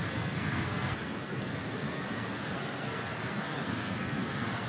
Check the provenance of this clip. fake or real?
fake